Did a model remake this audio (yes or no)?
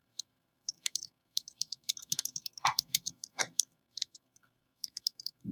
yes